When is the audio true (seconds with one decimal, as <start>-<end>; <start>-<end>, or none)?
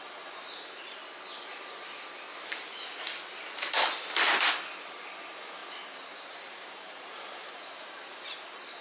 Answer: 1.0-4.5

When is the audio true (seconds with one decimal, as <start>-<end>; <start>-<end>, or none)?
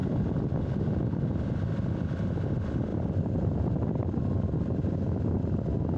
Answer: 0.0-6.0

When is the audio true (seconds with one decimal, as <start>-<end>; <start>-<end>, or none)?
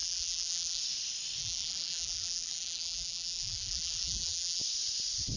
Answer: 0.8-1.4; 4.6-5.4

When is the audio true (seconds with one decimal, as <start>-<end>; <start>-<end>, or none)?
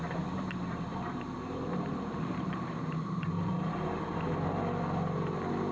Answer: 0.0-0.9; 4.3-5.7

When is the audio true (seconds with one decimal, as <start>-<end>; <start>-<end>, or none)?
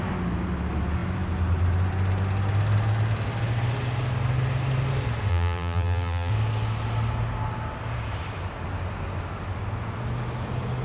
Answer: 0.0-5.3; 6.3-10.8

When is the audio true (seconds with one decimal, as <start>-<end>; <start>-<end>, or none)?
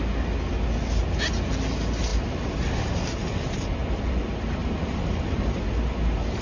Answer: 0.0-2.1; 3.1-4.6; 5.6-6.4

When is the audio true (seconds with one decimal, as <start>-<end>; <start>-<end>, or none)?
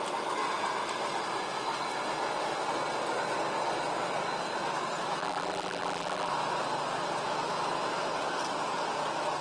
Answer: 0.0-5.2; 6.3-9.4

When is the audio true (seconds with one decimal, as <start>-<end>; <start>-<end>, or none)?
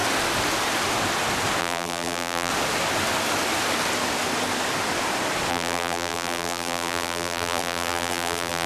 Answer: 0.0-1.6; 2.5-5.5